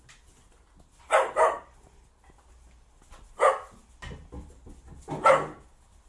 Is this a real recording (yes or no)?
yes